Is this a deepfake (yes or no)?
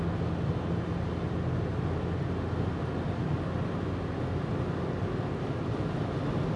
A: no